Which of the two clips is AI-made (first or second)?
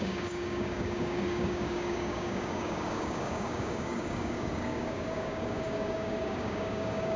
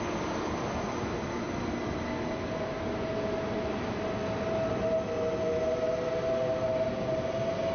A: first